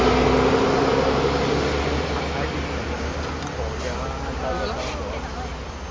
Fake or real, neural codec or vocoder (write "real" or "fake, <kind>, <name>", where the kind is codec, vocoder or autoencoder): real